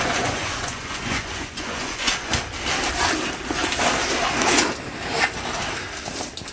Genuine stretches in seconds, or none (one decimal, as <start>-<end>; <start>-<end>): 2.3-6.5